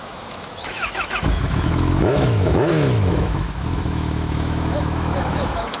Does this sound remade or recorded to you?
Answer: remade